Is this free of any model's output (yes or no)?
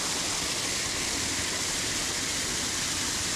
yes